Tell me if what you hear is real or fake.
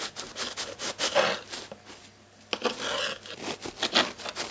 real